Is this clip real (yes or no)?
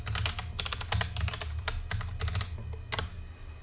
yes